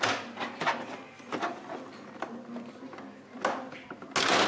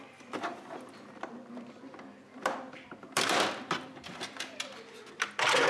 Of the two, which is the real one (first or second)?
first